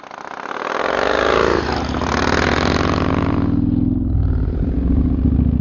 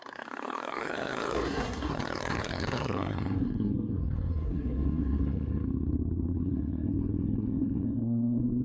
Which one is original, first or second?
first